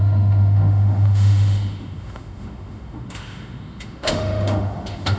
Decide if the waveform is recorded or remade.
remade